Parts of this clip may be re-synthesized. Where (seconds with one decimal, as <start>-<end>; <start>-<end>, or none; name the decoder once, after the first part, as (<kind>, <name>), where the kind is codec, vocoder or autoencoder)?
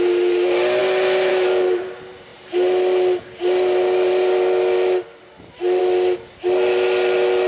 none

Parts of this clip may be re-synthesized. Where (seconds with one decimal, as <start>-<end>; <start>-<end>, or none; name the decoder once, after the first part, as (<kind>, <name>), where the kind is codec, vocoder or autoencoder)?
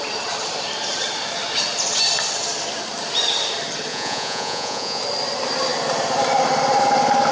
3.9-5.0 (vocoder, Vocos)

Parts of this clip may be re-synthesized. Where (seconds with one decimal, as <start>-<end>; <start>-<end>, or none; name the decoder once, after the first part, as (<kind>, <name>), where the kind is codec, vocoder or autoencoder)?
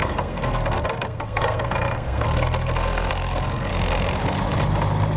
0.0-3.7 (codec, SNAC)